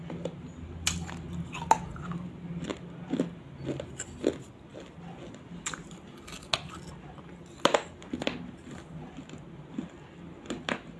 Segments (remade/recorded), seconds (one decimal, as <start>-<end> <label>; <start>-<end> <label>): 0.0-11.0 recorded